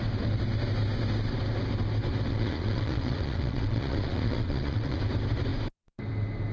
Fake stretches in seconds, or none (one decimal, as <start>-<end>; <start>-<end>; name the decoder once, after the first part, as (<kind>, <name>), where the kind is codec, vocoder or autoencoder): 2.3-5.0 (vocoder, Vocos)